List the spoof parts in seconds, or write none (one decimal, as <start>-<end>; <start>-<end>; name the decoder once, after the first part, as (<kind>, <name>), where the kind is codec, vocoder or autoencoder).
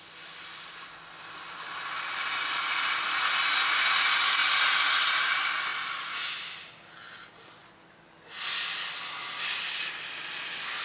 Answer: none